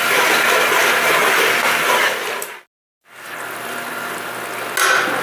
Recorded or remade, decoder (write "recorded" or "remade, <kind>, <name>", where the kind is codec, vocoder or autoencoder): recorded